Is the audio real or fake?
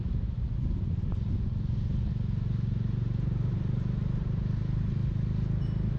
real